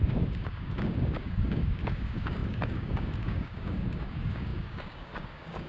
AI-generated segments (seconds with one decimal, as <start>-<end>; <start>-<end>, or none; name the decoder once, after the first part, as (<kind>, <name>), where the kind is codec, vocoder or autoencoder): 0.0-5.7 (codec, DAC)